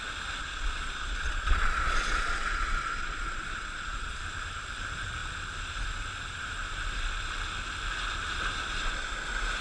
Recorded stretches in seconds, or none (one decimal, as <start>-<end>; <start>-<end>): 0.0-0.4; 4.2-9.6